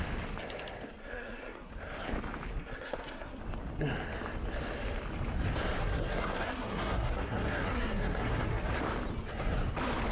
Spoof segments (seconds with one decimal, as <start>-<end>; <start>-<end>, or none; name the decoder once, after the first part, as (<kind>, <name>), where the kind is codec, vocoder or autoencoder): 1.0-1.7 (codec, SNAC); 2.6-3.4; 5.8-8.7